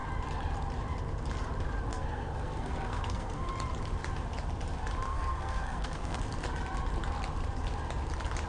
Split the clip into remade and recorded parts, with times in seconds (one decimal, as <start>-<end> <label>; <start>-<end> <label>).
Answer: 0.0-1.9 recorded; 1.9-3.5 remade; 3.5-5.1 recorded; 5.1-6.2 remade; 6.2-8.5 recorded